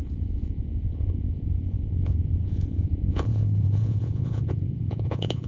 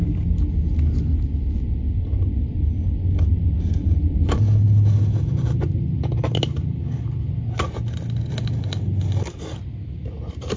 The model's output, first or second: first